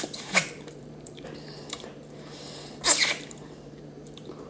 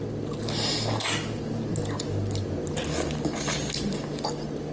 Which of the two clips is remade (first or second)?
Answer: first